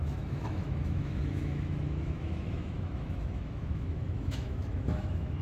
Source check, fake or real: fake